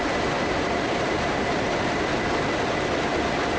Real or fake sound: real